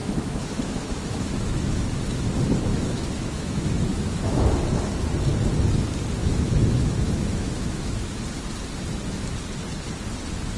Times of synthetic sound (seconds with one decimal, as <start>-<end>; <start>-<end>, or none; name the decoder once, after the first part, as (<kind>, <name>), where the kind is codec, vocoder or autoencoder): 0.0-2.1 (autoencoder, DAC-VAE); 2.7-4.5; 6.2-8.2